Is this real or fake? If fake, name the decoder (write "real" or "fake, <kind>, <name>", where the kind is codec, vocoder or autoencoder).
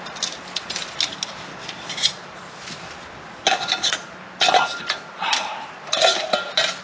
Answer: real